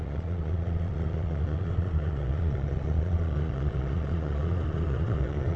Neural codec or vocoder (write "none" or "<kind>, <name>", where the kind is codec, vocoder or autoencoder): vocoder, Vocos